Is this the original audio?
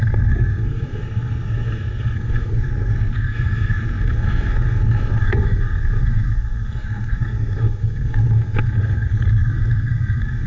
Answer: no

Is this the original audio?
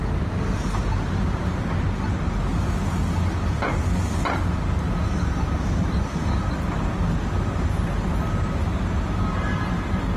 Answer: yes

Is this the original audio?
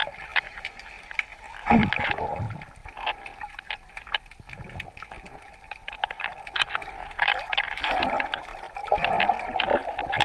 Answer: yes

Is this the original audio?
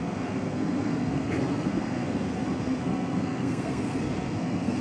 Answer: no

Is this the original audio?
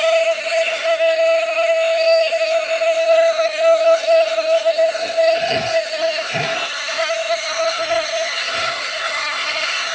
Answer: no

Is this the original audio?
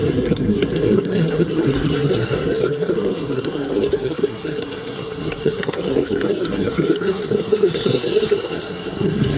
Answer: no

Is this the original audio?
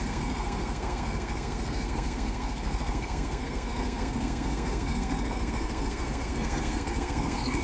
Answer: no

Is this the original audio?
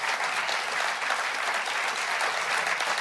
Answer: yes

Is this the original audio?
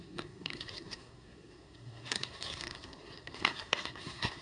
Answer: no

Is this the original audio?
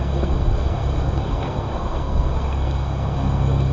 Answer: no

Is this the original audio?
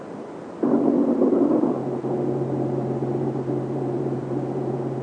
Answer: yes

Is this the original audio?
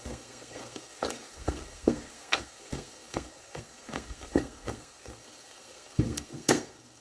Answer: no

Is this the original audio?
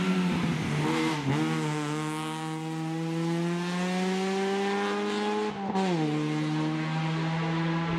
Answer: yes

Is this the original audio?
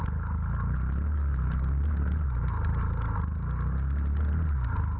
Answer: yes